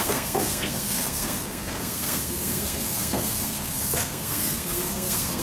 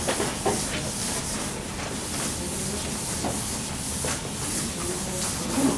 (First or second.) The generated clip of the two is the first